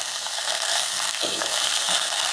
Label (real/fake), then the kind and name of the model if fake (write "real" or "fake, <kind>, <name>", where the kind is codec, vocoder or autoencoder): fake, codec, SNAC